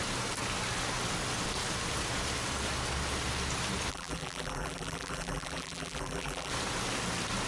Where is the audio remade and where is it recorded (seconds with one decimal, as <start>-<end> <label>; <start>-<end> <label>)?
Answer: 0.0-3.9 recorded; 3.9-6.5 remade; 6.5-7.5 recorded